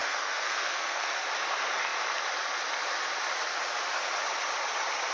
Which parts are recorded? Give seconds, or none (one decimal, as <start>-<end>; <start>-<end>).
1.1-5.1